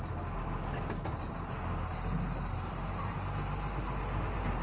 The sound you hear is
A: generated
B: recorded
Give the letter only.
B